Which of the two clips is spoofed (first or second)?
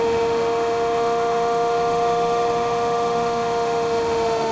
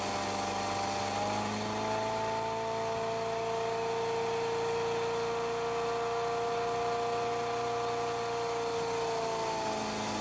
first